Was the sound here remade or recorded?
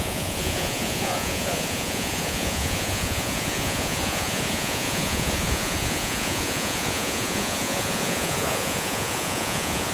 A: remade